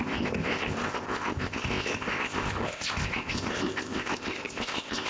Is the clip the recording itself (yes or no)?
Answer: no